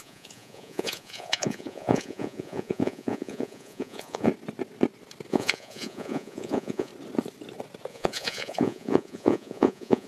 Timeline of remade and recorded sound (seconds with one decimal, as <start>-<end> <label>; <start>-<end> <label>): 0.0-4.3 remade; 4.3-5.3 recorded; 5.3-6.9 remade; 6.9-7.9 recorded; 7.9-10.1 remade